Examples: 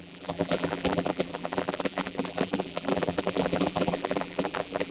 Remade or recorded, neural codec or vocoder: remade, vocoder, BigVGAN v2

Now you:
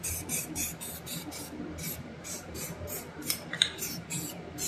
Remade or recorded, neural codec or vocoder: remade, vocoder, BigVGAN v2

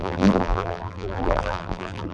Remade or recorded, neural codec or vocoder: remade, vocoder, BigVGAN v2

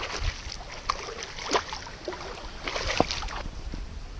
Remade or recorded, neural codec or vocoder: recorded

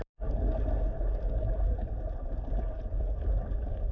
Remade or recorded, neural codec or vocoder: recorded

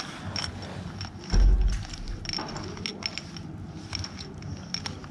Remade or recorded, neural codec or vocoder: recorded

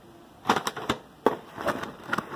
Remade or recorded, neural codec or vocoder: recorded